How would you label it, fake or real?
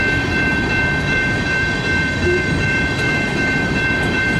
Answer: fake